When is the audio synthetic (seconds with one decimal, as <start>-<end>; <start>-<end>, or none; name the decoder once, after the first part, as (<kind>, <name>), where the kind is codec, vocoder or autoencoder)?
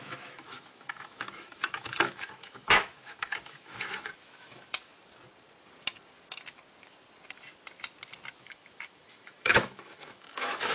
0.0-4.9 (autoencoder, DAC-VAE); 8.4-10.7